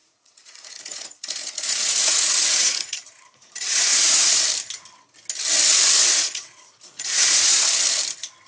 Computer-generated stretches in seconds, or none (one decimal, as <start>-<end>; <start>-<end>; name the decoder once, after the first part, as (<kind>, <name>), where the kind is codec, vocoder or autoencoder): 0.0-4.4 (vocoder, Vocos); 6.0-7.6